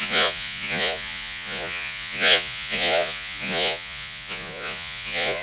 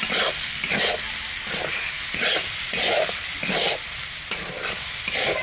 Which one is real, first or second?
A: second